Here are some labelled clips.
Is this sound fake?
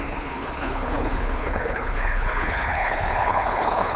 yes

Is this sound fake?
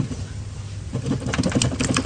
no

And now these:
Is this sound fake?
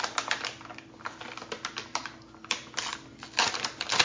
no